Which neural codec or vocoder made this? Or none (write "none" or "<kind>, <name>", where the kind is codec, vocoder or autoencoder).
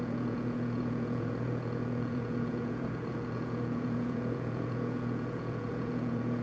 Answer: vocoder, Vocos